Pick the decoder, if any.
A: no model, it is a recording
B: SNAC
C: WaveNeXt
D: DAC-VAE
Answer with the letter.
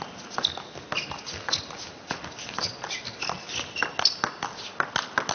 A